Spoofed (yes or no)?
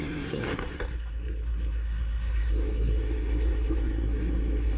yes